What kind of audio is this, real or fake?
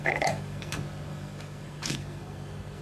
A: fake